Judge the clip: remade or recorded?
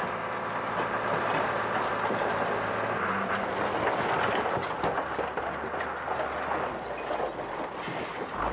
recorded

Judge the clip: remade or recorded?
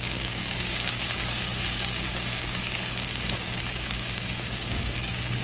remade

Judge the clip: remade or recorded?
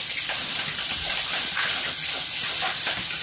recorded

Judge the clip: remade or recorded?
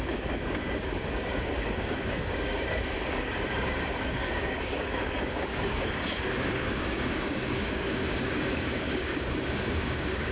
remade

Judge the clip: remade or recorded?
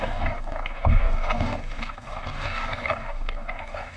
remade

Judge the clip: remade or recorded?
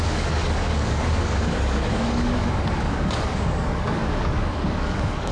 remade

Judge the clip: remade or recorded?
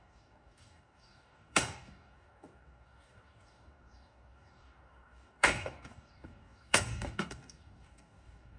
remade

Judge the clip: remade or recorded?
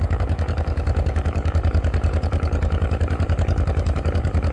remade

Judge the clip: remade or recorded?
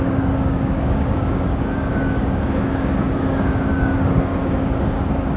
remade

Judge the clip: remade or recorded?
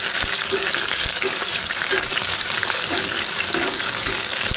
remade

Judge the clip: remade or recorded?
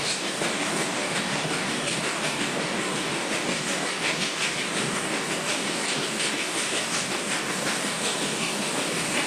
remade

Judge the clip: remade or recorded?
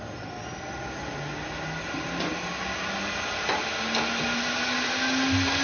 recorded